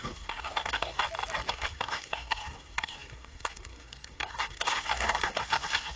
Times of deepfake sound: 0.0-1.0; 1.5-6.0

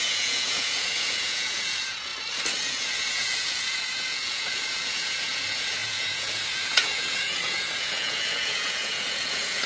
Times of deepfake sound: 0.0-2.1; 2.6-9.7